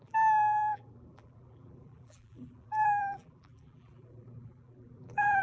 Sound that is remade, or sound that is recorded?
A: remade